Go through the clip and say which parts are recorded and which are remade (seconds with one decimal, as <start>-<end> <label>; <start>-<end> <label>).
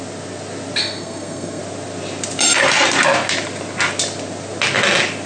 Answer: 0.0-0.8 recorded; 0.8-1.6 remade; 1.6-5.3 recorded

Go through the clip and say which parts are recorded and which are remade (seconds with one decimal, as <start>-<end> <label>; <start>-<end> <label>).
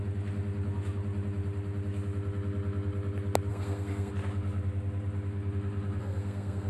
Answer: 0.0-3.5 recorded; 3.5-4.1 remade; 4.1-6.0 recorded; 6.0-6.7 remade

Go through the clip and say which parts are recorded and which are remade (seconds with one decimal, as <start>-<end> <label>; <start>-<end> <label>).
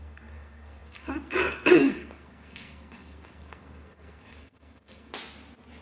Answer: 0.0-5.1 remade; 5.1-5.8 recorded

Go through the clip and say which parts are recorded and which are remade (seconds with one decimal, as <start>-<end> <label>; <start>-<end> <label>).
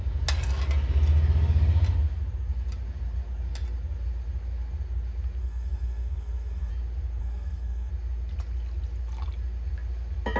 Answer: 0.0-5.4 recorded; 5.4-6.7 remade; 6.7-7.2 recorded; 7.2-7.9 remade; 7.9-10.4 recorded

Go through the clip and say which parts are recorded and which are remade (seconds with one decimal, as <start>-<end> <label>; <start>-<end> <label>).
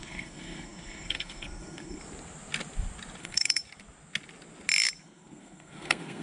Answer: 0.0-2.0 remade; 2.0-3.2 recorded; 3.2-3.6 remade; 3.6-5.0 recorded; 5.0-6.2 remade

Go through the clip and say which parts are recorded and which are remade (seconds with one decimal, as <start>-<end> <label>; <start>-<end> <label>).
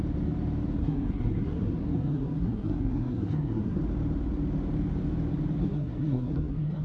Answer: 0.0-0.8 recorded; 0.8-3.8 remade; 3.8-5.6 recorded; 5.6-6.8 remade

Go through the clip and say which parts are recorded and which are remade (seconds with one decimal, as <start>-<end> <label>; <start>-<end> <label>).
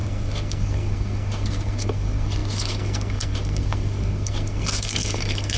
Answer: 0.0-5.6 remade